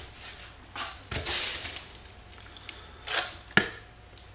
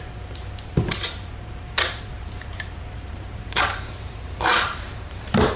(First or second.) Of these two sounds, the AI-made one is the second